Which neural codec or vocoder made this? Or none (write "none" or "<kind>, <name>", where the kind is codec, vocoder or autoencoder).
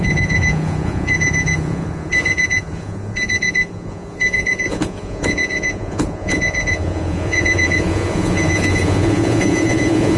vocoder, Vocos